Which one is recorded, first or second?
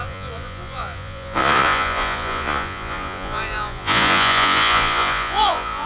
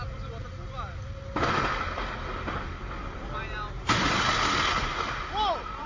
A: second